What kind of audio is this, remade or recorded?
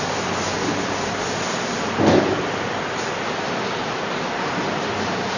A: recorded